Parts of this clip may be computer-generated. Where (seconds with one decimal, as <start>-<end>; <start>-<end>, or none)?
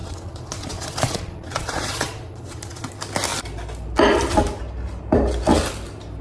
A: 0.0-2.9